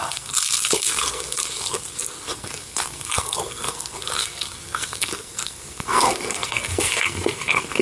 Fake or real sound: fake